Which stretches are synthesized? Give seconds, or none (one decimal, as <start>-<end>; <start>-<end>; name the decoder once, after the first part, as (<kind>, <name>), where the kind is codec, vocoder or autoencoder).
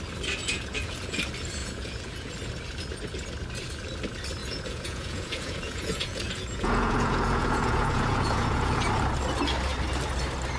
0.4-1.2 (vocoder, Vocos); 1.6-2.3; 4.4-8.9